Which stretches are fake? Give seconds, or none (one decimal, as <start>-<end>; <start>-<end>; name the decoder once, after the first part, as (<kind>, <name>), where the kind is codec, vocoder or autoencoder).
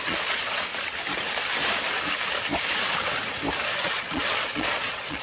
0.0-0.7 (vocoder, Vocos); 3.8-5.2